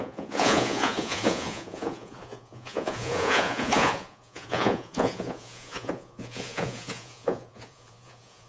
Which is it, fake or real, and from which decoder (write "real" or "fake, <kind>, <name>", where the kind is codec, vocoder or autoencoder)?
fake, vocoder, Vocos